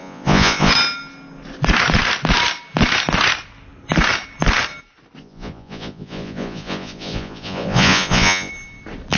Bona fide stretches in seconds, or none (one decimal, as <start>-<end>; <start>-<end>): 0.7-5.2; 8.5-9.2